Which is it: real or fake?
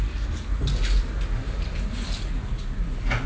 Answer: real